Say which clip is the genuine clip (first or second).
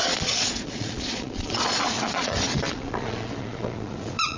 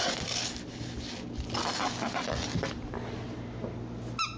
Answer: second